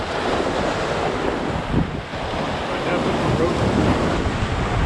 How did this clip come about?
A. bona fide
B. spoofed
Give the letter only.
A